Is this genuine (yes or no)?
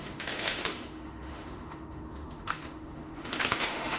no